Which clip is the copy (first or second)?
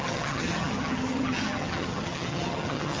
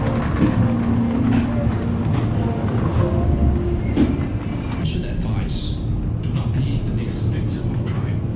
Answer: first